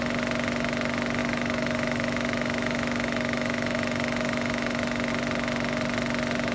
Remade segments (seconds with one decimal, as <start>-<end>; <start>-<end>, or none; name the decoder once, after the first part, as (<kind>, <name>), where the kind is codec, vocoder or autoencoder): 1.2-5.1 (autoencoder, DAC-VAE)